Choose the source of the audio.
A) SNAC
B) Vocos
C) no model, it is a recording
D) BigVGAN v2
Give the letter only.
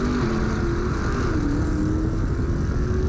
C